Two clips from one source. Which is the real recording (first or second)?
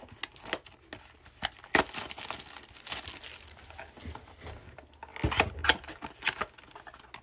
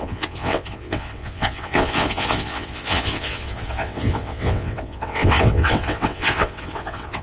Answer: first